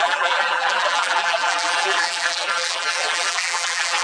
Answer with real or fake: fake